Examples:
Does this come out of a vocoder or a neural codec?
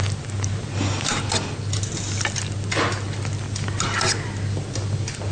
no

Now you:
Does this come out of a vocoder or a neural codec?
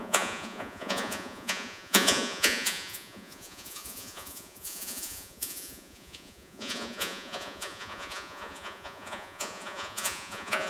yes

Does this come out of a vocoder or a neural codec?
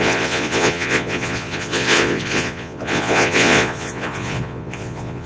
yes